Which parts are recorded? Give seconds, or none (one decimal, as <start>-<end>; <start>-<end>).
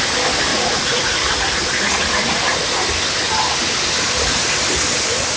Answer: 0.0-0.5; 1.3-5.4